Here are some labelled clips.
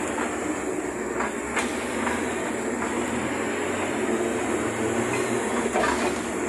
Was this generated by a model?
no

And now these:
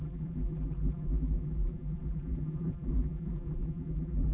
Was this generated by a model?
yes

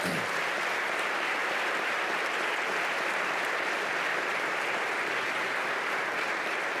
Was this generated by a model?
no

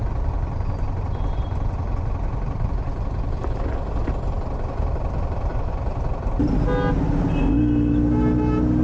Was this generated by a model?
no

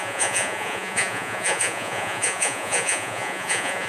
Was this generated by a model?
yes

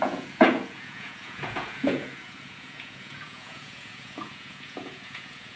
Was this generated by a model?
yes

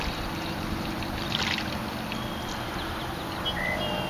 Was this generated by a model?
no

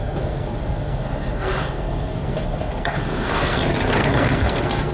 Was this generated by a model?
yes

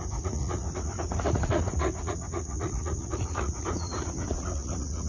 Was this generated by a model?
yes